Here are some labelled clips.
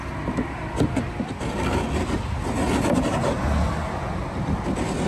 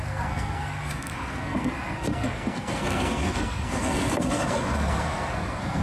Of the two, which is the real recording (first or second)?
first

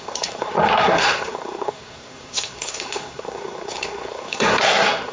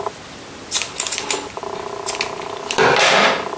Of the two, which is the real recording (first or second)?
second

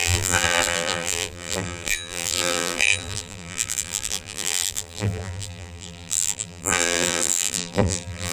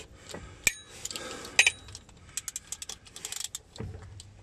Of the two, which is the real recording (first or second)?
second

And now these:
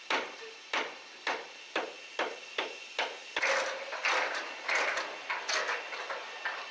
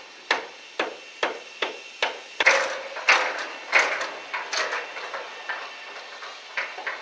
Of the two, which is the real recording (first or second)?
second